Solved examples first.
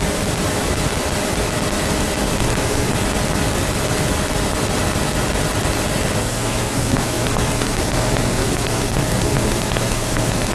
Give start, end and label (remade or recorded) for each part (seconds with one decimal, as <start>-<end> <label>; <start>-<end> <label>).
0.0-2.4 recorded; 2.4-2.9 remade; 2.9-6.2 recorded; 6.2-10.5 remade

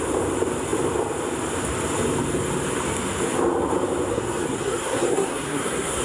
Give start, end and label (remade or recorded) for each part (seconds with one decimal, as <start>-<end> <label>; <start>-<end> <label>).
0.0-4.1 recorded; 4.1-6.0 remade

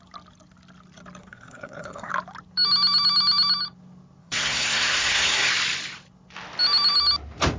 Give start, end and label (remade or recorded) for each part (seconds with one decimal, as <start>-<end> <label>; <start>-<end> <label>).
0.0-1.2 recorded; 1.2-2.1 remade; 2.1-4.2 recorded; 4.2-5.5 remade; 5.5-7.6 recorded

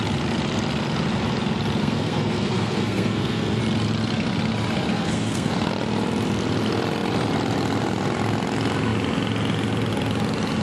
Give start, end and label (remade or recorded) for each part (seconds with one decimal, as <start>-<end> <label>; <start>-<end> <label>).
0.0-1.8 recorded; 1.8-3.6 remade; 3.6-4.9 recorded; 4.9-5.7 remade; 5.7-10.6 recorded

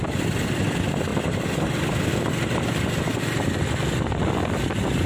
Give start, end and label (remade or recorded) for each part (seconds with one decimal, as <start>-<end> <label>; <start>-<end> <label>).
0.0-5.1 recorded

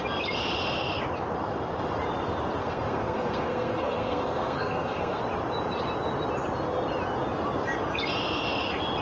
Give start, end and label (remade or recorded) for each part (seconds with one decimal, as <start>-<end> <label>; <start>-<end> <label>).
0.0-2.6 recorded; 2.6-5.2 remade; 5.2-9.0 recorded